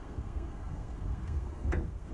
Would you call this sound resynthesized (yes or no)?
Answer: yes